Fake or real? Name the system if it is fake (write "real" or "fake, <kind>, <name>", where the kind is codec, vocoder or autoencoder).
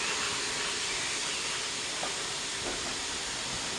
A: real